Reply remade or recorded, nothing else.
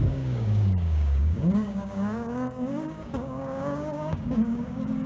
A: remade